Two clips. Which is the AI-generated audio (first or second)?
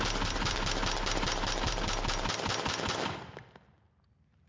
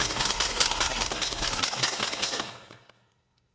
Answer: second